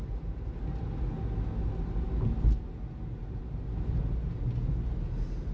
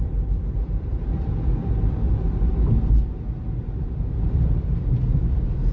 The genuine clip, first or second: first